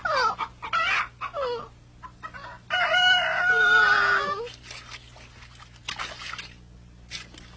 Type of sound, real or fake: real